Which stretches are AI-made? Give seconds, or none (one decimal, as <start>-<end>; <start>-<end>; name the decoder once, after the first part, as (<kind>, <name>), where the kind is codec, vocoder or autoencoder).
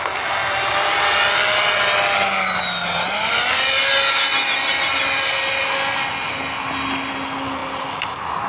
none